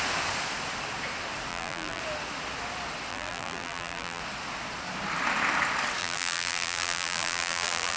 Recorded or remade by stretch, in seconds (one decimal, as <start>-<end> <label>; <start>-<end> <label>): 0.0-1.5 recorded; 1.5-2.0 remade; 2.0-3.1 recorded; 3.1-4.2 remade; 4.2-6.0 recorded; 6.0-8.0 remade

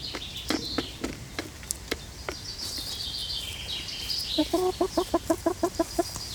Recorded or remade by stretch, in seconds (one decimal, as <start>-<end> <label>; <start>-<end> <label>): 0.0-3.2 remade; 3.2-4.0 recorded; 4.0-4.4 remade; 4.4-5.3 recorded; 5.3-6.3 remade

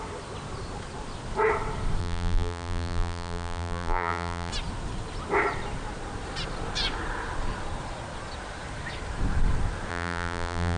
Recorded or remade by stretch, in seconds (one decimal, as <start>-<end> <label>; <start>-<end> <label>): 0.0-2.0 recorded; 2.0-4.5 remade; 4.5-9.9 recorded; 9.9-10.8 remade

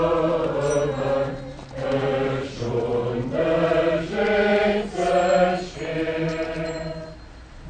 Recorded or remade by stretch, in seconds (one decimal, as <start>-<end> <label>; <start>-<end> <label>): 0.0-4.5 recorded; 4.5-5.2 remade; 5.2-5.9 recorded; 5.9-6.9 remade; 6.9-7.7 recorded